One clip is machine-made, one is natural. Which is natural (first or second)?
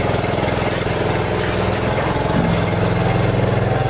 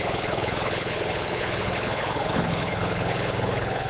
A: first